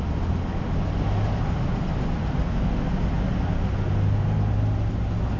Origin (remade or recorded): recorded